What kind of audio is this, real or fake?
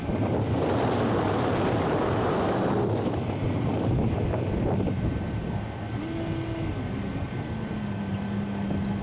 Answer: real